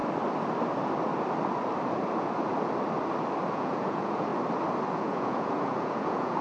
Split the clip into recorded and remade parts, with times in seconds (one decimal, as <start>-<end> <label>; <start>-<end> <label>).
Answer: 0.0-3.5 recorded; 3.5-4.3 remade; 4.3-4.9 recorded; 4.9-6.4 remade